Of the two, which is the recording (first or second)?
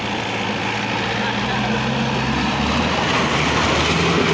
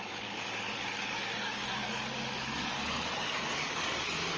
first